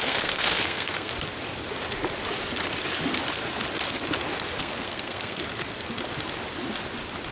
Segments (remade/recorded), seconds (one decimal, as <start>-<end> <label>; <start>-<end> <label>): 0.0-1.1 remade; 1.1-4.6 recorded; 4.6-5.4 remade; 5.4-7.3 recorded